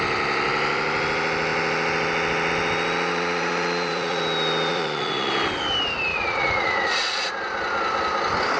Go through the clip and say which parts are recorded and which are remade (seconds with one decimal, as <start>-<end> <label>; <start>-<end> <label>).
0.0-3.1 recorded; 3.1-4.2 remade; 4.2-4.7 recorded; 4.7-5.3 remade; 5.3-6.1 recorded; 6.1-7.3 remade; 7.3-8.6 recorded